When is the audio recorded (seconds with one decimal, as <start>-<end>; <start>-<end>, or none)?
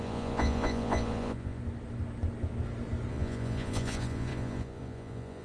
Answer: 1.6-3.1